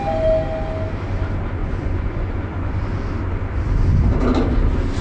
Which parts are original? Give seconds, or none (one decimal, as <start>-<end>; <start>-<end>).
0.0-1.6; 2.8-5.0